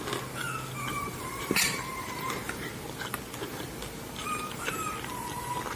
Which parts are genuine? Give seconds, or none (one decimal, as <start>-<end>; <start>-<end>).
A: 0.0-0.9; 2.7-4.2; 5.1-5.8